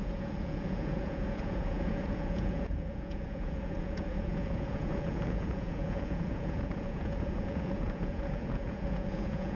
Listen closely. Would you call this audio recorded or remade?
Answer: remade